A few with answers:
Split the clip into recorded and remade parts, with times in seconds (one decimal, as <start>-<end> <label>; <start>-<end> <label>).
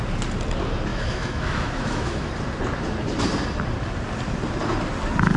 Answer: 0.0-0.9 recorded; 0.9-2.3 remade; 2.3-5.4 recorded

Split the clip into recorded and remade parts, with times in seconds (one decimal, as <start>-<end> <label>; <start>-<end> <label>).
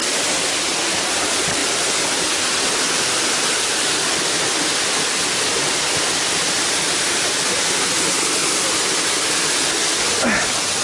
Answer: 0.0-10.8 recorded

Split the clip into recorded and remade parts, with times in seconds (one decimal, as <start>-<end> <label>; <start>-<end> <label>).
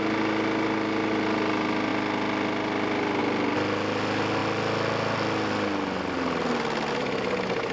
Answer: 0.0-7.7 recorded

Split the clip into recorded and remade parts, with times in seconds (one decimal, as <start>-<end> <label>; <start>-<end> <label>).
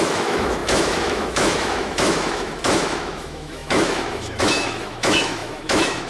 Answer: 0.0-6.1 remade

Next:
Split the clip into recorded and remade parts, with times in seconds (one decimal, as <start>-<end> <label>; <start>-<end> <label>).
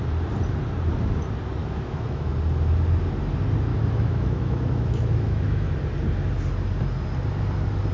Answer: 0.0-1.6 recorded; 1.6-2.3 remade; 2.3-3.7 recorded; 3.7-5.7 remade; 5.7-7.9 recorded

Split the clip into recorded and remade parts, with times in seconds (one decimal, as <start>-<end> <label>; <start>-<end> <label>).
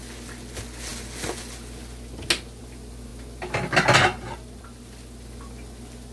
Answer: 0.0-6.1 recorded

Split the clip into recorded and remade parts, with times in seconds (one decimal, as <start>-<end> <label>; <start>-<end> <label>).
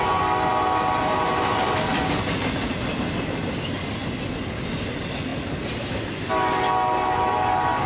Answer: 0.0-7.9 recorded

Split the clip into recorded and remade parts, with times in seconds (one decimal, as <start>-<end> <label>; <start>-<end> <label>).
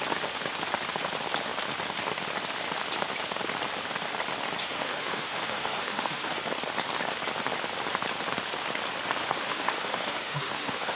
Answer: 0.0-4.6 recorded; 4.6-6.4 remade; 6.4-9.2 recorded; 9.2-11.0 remade